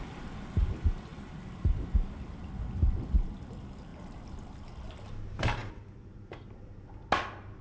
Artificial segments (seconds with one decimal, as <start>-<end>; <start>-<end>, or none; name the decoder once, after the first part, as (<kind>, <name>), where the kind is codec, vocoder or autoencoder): none